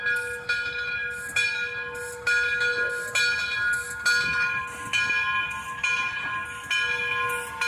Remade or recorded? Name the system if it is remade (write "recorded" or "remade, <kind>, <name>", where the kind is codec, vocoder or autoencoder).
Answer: recorded